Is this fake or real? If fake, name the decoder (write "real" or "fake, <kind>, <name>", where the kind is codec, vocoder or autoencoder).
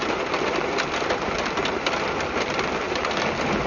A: real